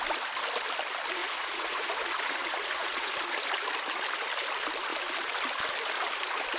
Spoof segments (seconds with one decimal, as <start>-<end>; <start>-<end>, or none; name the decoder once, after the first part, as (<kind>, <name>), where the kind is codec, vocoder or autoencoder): 1.2-3.1 (vocoder, Vocos)